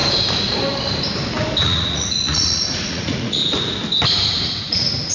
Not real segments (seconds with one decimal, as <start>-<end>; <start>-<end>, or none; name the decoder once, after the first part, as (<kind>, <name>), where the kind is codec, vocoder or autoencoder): 1.6-3.4 (vocoder, Vocos); 4.6-5.1